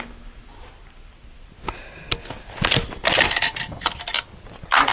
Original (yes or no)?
yes